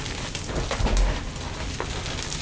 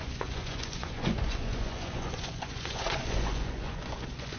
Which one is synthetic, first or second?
second